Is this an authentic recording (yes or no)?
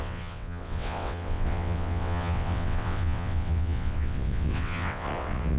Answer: no